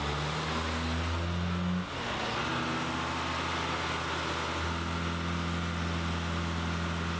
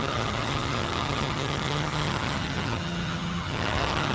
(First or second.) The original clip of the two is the first